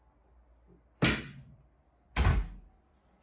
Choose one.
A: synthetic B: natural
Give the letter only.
B